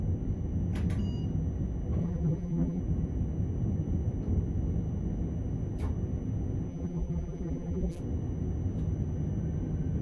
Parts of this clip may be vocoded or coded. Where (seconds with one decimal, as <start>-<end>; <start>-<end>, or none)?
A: 2.0-2.8; 6.7-8.0

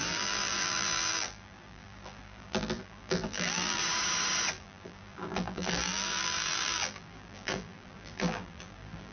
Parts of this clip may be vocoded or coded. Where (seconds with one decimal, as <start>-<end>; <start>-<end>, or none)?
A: 0.0-3.8; 4.5-9.1

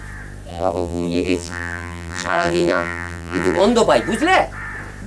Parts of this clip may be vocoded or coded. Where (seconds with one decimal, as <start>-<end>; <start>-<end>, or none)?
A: 0.5-3.6

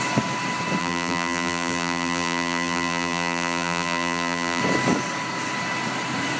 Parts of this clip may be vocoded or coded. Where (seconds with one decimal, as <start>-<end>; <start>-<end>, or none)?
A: 0.8-4.6

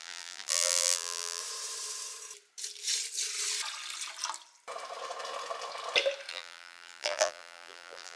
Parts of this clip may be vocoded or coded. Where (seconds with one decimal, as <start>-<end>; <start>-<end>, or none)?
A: 0.0-1.4; 6.3-8.2

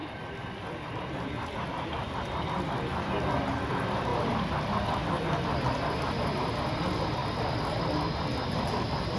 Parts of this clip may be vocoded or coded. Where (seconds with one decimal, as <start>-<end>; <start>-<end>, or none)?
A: 0.0-0.9; 4.1-6.0; 7.2-7.8